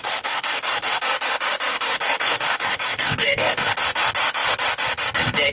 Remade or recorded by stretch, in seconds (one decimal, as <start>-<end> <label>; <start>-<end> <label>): 0.0-1.0 remade; 1.0-1.7 recorded; 1.7-3.8 remade; 3.8-5.5 recorded